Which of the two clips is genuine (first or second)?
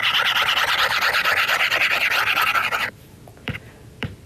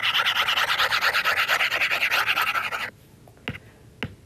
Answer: second